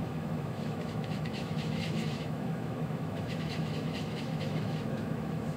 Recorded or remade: remade